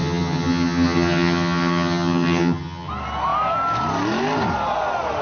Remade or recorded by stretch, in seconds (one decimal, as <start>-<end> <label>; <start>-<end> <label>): 0.0-2.9 remade; 2.9-5.2 recorded